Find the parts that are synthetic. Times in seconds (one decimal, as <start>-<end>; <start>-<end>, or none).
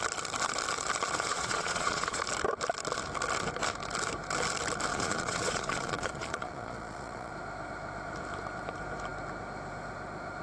1.3-2.2; 4.9-7.3